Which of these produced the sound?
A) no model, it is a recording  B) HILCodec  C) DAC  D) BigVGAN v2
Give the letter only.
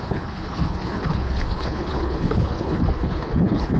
B